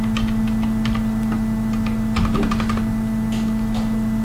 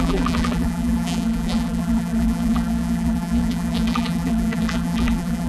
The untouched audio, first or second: first